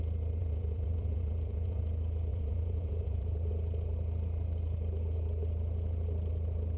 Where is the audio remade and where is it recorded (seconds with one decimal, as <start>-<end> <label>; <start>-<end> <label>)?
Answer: 0.0-0.4 recorded; 0.4-1.8 remade; 1.8-2.3 recorded; 2.3-3.5 remade; 3.5-6.8 recorded